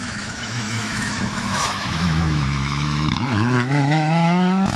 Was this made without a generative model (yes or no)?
no